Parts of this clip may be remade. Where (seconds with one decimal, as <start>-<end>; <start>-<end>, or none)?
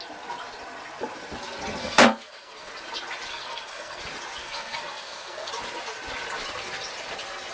1.8-2.7; 3.3-4.0; 4.4-5.5